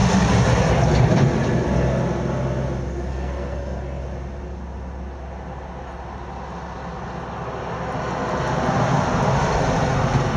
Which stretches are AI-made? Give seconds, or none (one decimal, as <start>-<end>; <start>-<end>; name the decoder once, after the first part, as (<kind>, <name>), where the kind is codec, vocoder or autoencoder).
3.1-4.0 (codec, SNAC)